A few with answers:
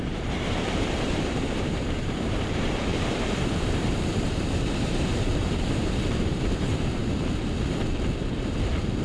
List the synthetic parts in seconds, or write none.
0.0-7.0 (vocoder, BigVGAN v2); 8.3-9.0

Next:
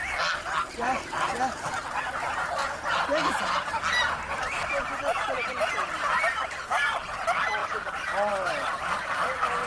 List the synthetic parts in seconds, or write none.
none

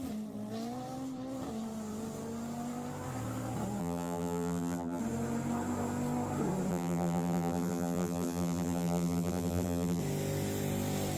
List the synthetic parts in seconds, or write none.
3.8-5.0 (vocoder, BigVGAN v2); 6.7-10.0

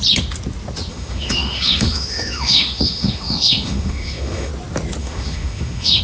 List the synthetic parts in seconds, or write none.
0.9-4.5 (autoencoder, DAC-VAE); 5.0-6.0

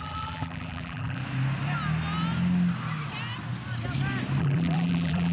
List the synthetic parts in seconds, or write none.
0.0-1.2 (vocoder, BigVGAN v2); 4.4-5.3

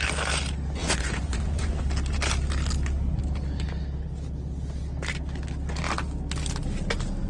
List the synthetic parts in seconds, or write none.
0.8-1.8 (vocoder, Vocos)